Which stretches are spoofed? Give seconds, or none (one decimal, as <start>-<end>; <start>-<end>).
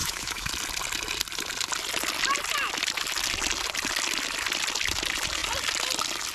0.0-0.5